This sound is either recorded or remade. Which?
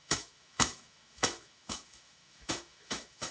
remade